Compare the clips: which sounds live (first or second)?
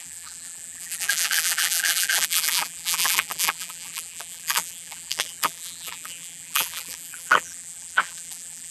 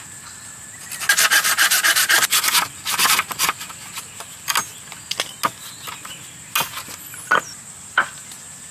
second